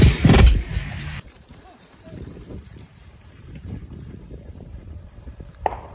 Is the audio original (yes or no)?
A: no